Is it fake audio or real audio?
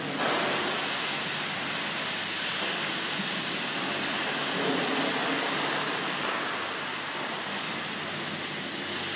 real